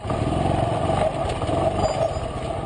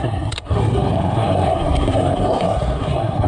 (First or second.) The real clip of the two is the first